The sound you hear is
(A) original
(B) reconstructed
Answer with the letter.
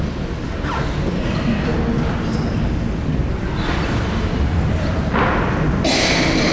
A